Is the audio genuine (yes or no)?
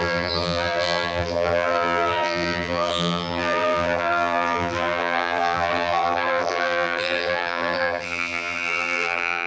no